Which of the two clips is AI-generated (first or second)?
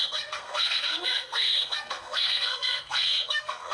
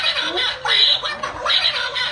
first